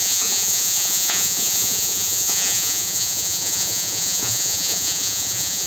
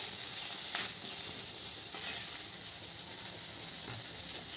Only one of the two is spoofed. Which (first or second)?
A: first